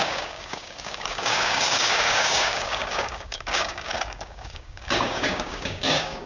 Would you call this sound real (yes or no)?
no